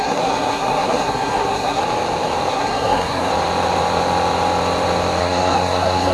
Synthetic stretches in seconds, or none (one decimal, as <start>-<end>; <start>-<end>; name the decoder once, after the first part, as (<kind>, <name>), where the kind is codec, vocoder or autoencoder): 0.0-1.8 (codec, SNAC); 2.5-3.3; 5.2-6.1